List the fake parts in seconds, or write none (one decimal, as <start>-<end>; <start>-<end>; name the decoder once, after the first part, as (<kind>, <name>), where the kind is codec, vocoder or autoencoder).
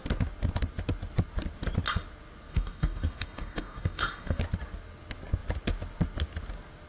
2.5-4.4 (codec, DAC)